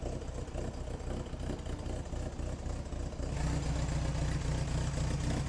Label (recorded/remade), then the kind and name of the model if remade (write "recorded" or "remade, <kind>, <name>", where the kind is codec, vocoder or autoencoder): recorded